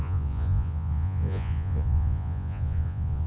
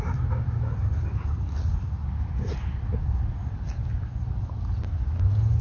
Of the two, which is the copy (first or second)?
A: first